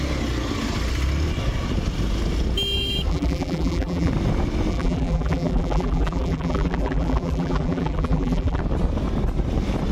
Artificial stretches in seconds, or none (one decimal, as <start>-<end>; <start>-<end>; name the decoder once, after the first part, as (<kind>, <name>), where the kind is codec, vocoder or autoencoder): 3.1-4.1 (vocoder, BigVGAN v2); 4.7-8.6